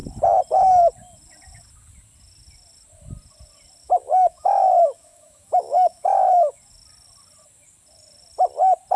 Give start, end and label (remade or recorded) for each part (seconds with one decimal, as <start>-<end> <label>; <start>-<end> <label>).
0.0-3.8 recorded; 3.8-6.6 remade; 6.6-9.0 recorded